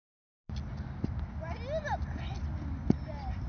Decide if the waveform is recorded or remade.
recorded